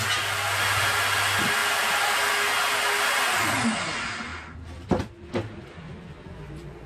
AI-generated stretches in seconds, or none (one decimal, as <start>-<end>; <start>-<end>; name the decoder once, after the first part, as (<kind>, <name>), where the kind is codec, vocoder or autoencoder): 1.6-2.3 (vocoder, BigVGAN v2)